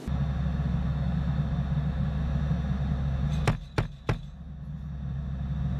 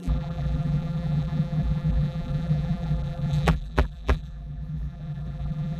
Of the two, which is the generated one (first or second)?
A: second